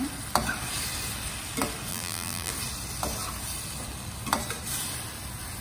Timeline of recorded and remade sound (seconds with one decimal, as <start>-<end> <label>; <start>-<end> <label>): 0.0-1.9 recorded; 1.9-2.5 remade; 2.5-5.6 recorded